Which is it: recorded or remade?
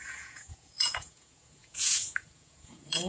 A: remade